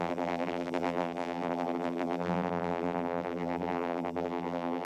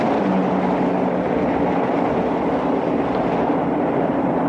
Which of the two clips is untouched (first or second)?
second